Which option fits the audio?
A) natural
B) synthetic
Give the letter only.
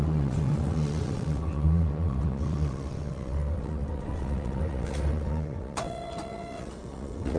B